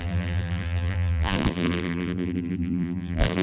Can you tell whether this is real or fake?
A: fake